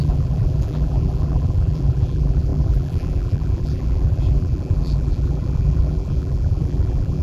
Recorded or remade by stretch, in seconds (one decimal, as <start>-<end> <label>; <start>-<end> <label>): 0.0-7.2 remade